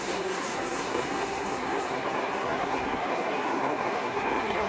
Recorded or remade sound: remade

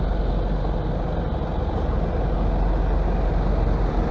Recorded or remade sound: recorded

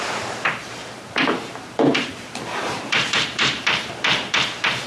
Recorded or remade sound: remade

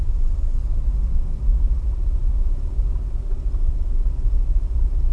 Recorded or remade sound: recorded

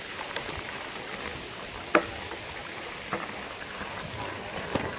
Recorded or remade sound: recorded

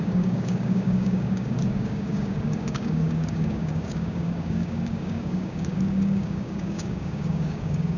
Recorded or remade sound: remade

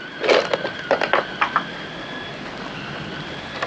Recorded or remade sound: recorded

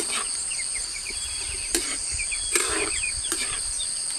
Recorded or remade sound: remade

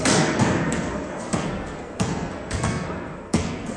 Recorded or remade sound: remade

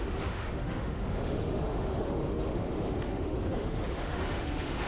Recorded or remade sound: remade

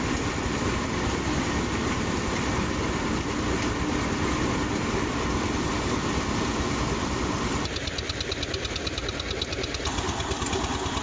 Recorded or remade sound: recorded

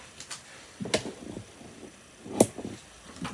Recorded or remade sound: recorded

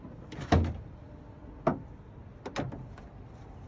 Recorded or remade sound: recorded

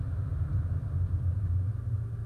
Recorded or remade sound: recorded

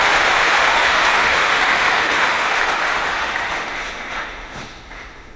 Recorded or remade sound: remade